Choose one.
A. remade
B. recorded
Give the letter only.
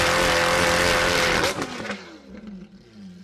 B